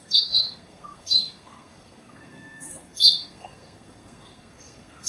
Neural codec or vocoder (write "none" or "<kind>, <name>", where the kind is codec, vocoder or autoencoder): codec, SNAC